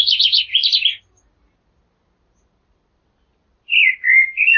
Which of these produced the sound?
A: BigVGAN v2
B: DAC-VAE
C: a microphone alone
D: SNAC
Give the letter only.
C